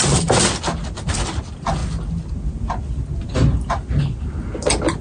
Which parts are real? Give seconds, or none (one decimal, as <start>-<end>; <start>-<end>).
0.0-5.0